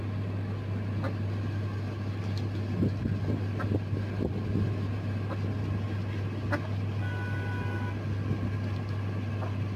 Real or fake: real